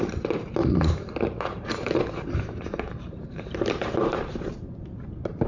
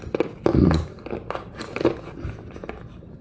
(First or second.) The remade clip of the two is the first